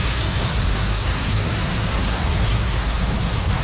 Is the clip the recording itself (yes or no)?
no